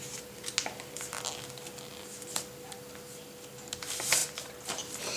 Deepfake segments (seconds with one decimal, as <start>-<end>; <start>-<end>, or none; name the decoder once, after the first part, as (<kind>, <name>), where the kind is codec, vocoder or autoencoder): none